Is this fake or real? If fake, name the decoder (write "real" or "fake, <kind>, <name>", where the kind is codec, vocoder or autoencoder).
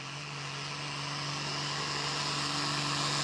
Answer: real